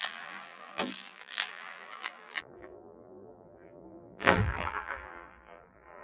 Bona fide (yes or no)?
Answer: no